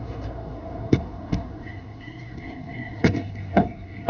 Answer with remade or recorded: remade